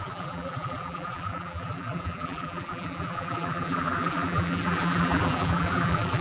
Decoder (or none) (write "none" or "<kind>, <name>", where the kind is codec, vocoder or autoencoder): vocoder, BigVGAN v2